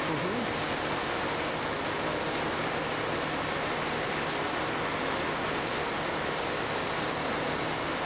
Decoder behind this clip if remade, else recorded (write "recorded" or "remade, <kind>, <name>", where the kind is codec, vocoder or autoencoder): recorded